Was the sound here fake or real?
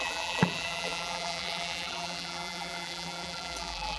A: fake